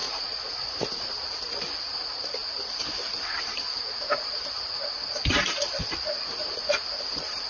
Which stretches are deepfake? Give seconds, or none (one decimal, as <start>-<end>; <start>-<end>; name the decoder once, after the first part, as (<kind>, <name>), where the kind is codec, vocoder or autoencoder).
0.0-1.1 (vocoder, Vocos)